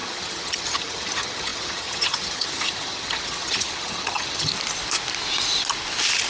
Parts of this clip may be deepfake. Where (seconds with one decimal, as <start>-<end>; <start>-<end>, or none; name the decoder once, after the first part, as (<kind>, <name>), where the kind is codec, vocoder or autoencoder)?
0.0-4.5 (vocoder, HiFi-GAN)

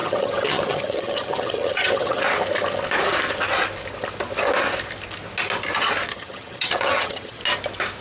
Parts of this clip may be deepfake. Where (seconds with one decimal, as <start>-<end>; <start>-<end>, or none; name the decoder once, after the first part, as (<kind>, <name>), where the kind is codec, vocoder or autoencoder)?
0.0-2.2 (vocoder, HiFi-GAN); 6.1-7.4

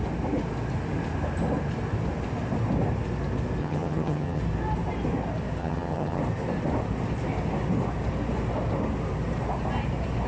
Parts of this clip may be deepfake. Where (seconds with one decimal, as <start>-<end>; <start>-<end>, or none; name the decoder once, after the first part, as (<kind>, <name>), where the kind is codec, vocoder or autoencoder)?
3.6-4.4 (vocoder, HiFi-GAN); 5.6-6.2

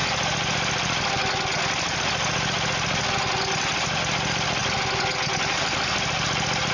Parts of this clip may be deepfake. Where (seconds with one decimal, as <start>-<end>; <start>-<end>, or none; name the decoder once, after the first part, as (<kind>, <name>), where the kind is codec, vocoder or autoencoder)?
none

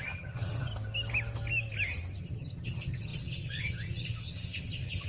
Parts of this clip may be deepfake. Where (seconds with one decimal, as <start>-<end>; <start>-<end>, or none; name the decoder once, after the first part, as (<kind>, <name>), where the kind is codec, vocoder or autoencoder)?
0.0-0.7 (vocoder, HiFi-GAN); 2.2-5.1